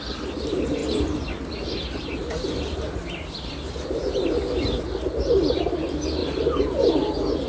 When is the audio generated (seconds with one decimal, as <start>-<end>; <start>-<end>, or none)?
none